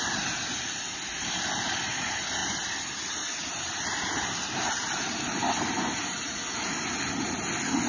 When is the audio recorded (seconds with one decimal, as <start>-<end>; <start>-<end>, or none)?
0.0-2.4; 7.1-7.9